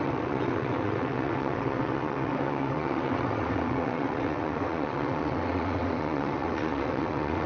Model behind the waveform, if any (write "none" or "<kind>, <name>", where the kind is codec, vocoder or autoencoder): vocoder, WaveNeXt